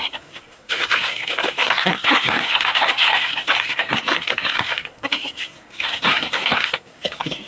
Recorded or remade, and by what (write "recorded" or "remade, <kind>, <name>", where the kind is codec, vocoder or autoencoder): remade, codec, SNAC